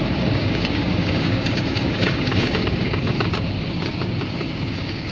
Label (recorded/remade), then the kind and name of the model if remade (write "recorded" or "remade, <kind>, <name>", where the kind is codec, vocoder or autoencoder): remade, codec, DAC